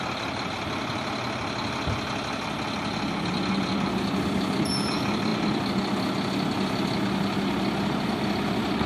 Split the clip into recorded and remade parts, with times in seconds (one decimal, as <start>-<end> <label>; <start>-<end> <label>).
0.0-8.9 recorded